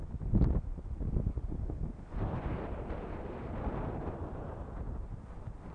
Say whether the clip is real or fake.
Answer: real